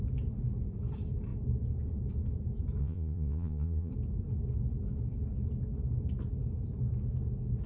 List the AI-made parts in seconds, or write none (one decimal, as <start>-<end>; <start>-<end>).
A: 2.8-3.9